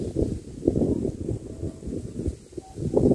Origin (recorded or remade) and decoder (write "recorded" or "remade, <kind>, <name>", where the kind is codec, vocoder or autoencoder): recorded